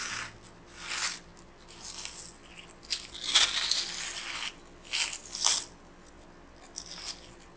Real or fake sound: real